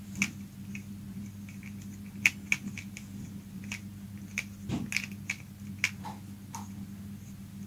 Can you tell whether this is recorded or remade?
recorded